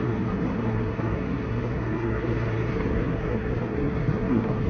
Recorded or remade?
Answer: remade